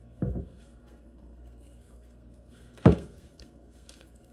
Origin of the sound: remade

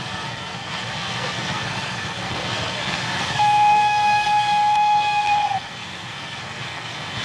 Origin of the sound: remade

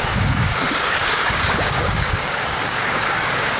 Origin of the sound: remade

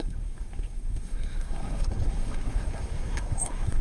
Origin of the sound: remade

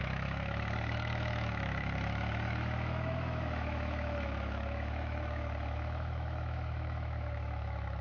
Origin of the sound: remade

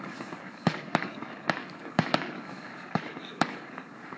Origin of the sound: remade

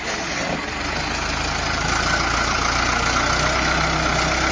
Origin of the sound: recorded